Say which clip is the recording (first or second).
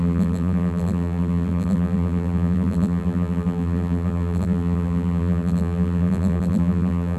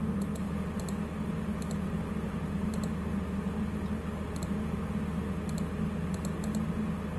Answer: second